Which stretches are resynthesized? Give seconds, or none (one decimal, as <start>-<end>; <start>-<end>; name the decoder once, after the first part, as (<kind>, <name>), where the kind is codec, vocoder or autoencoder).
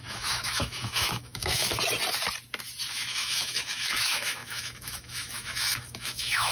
0.0-1.7 (autoencoder, DAC-VAE); 2.9-6.5